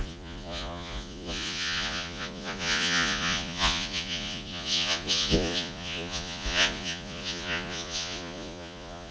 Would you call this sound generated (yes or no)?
yes